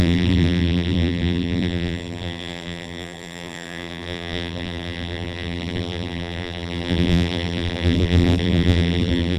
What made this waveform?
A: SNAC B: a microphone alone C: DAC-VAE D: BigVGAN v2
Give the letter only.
D